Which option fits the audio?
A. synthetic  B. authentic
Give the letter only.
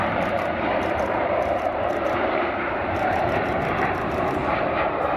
A